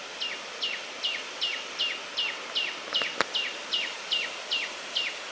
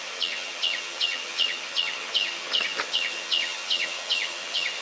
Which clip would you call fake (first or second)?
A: second